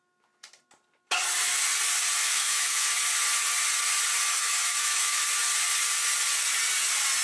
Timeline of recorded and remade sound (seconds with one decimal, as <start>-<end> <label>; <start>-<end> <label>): 0.0-2.2 recorded; 2.2-3.0 remade; 3.0-4.3 recorded; 4.3-5.2 remade; 5.2-7.2 recorded